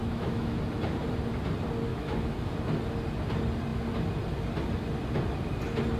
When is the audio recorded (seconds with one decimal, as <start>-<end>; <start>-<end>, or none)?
0.6-1.9; 2.5-6.0